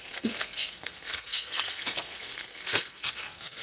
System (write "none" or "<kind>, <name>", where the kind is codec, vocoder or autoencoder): codec, SNAC